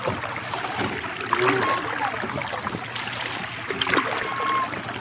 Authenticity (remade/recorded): recorded